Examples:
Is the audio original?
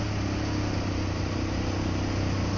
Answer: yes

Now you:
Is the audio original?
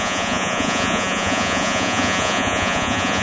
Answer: no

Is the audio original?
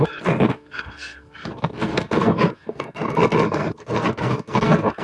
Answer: no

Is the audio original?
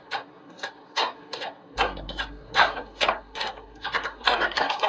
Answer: no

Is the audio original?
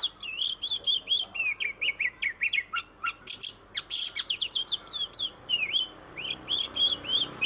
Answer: yes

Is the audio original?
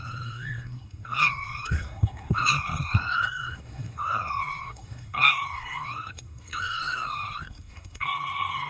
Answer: no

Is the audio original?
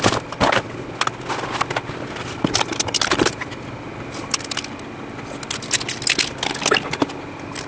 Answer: yes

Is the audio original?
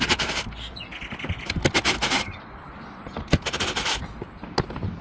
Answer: yes